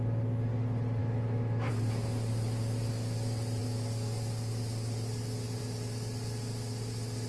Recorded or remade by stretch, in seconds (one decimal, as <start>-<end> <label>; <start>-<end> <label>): 0.0-1.0 recorded; 1.0-1.7 remade; 1.7-7.3 recorded